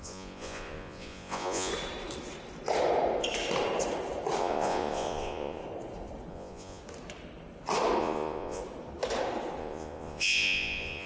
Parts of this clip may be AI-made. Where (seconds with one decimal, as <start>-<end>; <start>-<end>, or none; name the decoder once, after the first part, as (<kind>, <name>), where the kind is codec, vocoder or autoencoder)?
0.0-1.7 (vocoder, Vocos); 4.4-5.6; 6.3-6.8; 8.0-8.6; 9.6-11.1